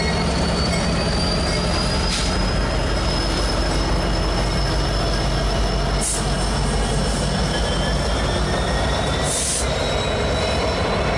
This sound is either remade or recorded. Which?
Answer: recorded